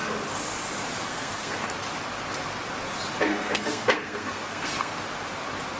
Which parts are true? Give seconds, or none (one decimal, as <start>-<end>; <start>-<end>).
0.0-1.1; 1.7-3.3; 4.9-5.8